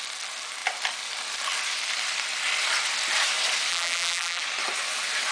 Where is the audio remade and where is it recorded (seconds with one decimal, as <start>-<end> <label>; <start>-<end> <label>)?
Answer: 0.0-3.7 recorded; 3.7-4.4 remade; 4.4-5.3 recorded